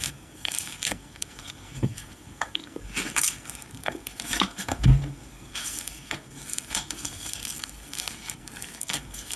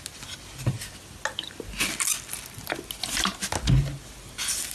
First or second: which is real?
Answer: second